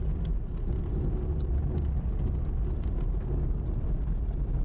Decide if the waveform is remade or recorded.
recorded